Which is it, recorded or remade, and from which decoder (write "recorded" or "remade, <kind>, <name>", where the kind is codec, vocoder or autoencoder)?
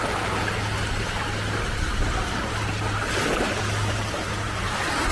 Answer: recorded